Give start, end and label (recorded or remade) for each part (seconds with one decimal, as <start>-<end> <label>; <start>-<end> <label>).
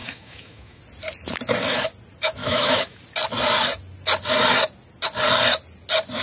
0.0-0.8 remade; 0.8-2.4 recorded; 2.4-3.0 remade; 3.0-6.2 recorded